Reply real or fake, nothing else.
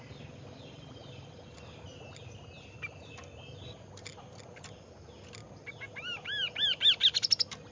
real